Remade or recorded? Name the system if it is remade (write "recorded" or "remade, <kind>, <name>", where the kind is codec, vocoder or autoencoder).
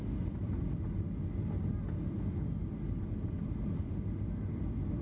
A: recorded